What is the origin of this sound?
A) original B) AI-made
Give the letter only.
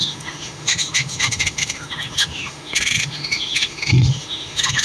B